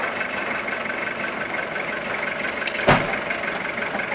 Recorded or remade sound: recorded